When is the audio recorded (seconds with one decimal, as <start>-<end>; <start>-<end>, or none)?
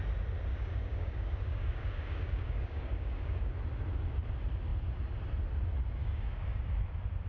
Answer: 0.0-0.5; 3.5-6.0; 6.6-7.3